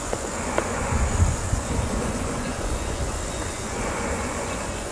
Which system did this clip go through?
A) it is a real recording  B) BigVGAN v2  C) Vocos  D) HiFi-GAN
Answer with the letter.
C